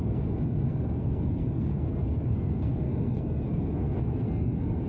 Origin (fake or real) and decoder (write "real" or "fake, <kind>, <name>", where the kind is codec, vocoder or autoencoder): fake, codec, SNAC